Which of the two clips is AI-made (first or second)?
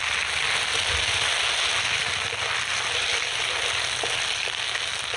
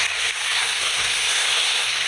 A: second